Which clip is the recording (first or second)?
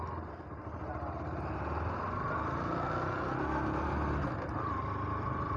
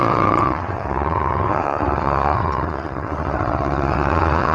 first